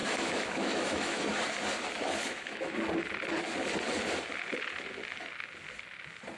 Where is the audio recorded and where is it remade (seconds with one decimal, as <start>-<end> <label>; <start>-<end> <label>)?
0.0-1.2 remade; 1.2-2.2 recorded; 2.2-2.8 remade; 2.8-6.4 recorded